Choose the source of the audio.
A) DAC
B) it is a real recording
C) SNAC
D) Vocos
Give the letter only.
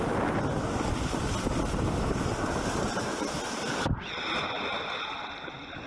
B